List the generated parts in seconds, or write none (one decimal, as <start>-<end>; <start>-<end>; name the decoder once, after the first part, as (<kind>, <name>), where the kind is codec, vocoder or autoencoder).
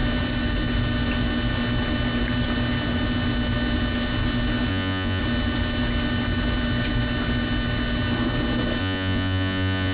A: 4.7-5.2 (vocoder, Vocos); 8.8-9.9